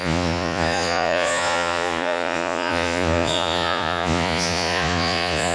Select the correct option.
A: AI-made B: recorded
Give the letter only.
A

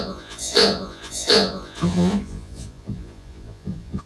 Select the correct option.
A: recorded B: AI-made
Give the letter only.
B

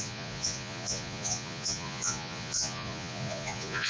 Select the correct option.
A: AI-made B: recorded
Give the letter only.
A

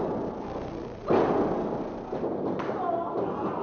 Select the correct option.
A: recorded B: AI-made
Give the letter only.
A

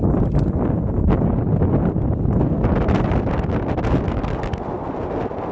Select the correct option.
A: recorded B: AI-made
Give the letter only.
A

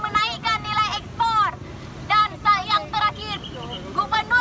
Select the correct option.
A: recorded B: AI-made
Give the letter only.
A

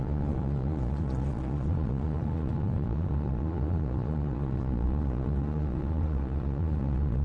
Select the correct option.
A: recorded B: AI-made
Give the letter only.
B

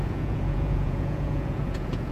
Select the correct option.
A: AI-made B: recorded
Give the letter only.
A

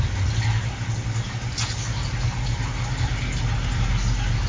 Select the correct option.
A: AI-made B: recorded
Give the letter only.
B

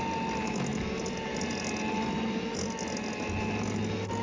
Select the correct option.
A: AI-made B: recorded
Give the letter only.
B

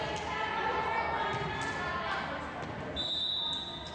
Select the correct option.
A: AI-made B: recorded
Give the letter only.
B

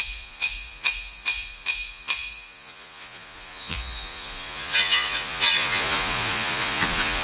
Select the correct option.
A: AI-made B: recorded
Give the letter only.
A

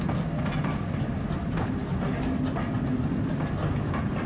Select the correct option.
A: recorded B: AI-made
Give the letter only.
A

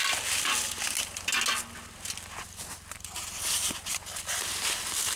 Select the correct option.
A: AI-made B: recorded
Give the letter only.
B